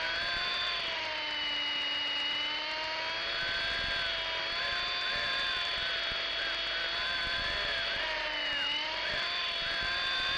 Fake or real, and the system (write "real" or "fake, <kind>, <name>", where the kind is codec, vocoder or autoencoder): real